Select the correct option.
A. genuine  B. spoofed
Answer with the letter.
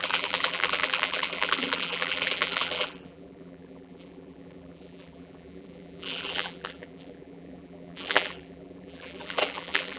B